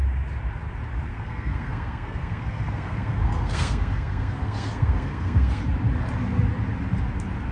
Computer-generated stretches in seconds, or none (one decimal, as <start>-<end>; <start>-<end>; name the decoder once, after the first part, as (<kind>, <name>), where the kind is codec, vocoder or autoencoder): 1.1-5.6 (codec, SNAC)